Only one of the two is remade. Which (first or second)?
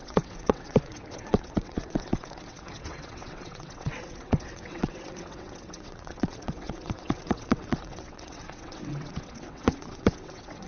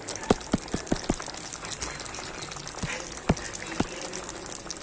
first